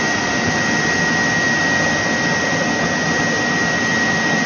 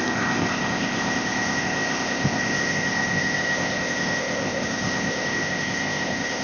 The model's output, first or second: second